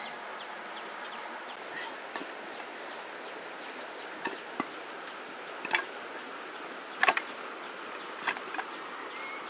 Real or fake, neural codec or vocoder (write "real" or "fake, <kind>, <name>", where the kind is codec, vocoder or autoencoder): real